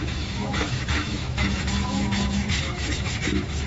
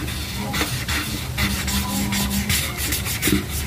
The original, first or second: second